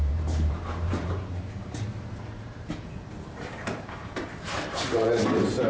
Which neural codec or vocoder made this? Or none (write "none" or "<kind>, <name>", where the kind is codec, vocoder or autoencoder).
vocoder, BigVGAN v2